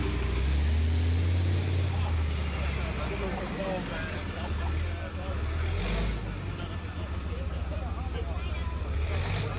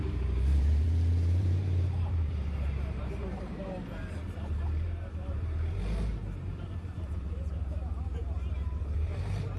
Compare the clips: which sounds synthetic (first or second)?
second